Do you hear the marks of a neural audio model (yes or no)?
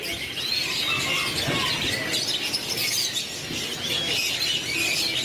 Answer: no